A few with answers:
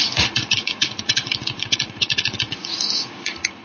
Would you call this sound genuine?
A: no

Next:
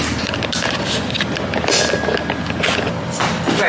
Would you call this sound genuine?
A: yes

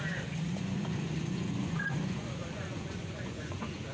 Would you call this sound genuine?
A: no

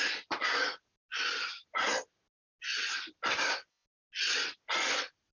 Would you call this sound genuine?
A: yes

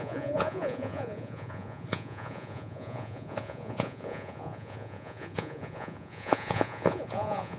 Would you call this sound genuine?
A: no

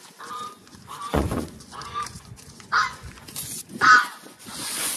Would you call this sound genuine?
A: no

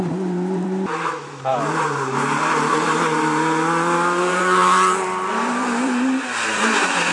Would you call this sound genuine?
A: no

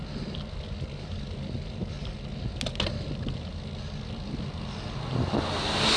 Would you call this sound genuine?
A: yes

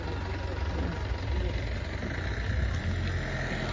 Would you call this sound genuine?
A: yes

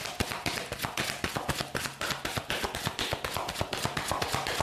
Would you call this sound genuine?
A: yes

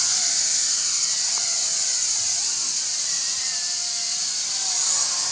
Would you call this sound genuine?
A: yes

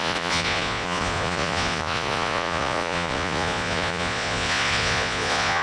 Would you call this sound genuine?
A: no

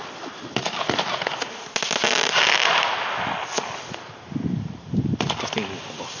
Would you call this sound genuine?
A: yes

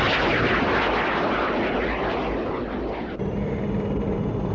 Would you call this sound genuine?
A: yes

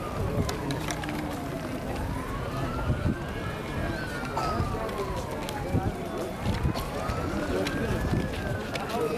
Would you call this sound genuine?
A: yes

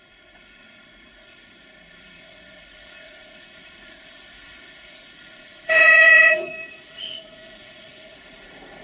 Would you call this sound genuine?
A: no